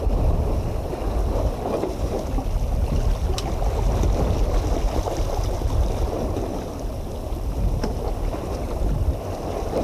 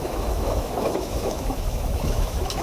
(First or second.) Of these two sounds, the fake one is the second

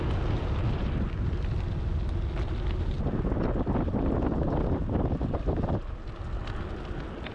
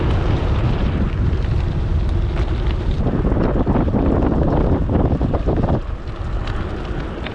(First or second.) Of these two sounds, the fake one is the second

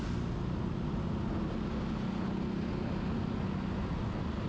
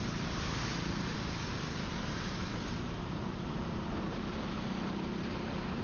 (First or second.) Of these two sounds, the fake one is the second